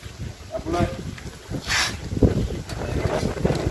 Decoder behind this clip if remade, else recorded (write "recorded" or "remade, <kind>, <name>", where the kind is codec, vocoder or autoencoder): recorded